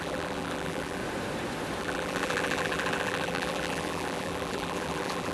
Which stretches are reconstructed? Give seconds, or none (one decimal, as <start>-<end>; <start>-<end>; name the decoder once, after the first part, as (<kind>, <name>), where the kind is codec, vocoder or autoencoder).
0.0-1.0 (vocoder, BigVGAN v2); 1.8-5.3